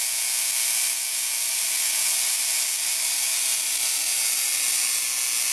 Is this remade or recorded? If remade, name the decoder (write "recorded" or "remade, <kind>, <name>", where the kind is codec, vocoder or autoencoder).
recorded